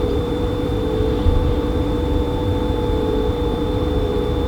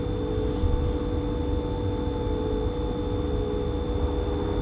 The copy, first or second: first